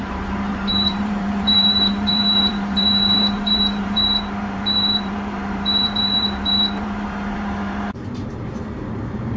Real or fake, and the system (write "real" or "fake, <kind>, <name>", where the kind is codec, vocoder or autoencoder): fake, vocoder, BigVGAN v2